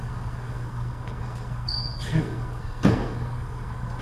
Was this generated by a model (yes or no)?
yes